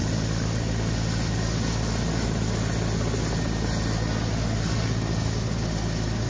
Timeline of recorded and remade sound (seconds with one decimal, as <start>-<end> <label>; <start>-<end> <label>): 0.0-6.3 recorded